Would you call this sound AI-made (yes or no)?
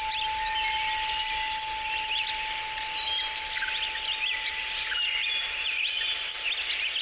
no